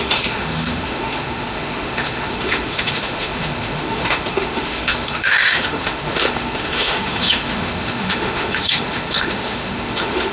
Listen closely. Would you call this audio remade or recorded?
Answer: remade